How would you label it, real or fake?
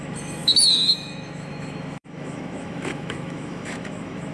fake